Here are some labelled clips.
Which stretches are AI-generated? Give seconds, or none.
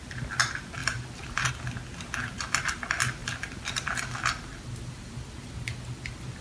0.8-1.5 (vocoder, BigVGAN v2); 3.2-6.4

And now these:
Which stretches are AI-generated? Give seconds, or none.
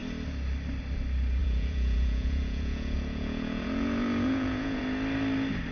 1.4-4.8 (vocoder, Vocos)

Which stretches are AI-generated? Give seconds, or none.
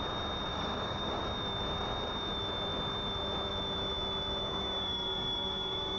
0.5-1.2 (codec, DAC); 4.4-6.0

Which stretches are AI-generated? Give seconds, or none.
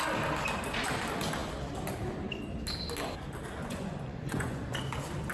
3.6-4.6 (vocoder, Vocos)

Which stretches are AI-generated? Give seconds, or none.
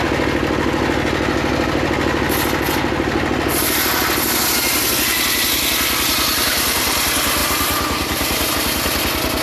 7.4-8.5 (vocoder, BigVGAN v2)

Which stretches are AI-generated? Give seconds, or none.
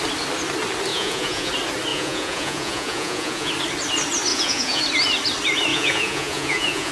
0.9-1.5 (vocoder, Vocos); 1.9-3.5; 4.3-4.8; 5.7-6.9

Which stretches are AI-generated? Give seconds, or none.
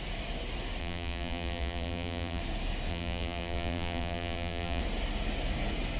0.8-2.4 (vocoder, BigVGAN v2); 2.9-4.8